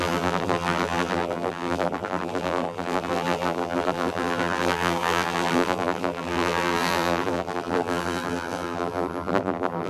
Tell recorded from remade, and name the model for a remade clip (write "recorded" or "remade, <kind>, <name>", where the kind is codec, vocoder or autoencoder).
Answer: remade, vocoder, BigVGAN v2